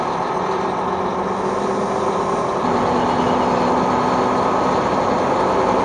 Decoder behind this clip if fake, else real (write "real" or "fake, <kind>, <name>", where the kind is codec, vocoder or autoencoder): real